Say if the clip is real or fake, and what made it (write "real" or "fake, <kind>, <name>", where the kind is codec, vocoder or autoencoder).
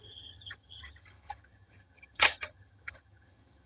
fake, vocoder, HiFi-GAN